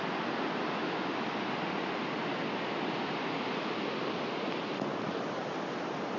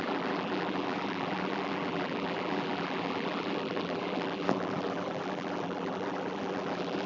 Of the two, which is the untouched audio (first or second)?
first